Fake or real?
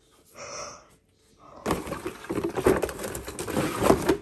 real